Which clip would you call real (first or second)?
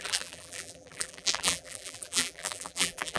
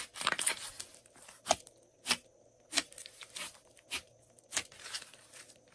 second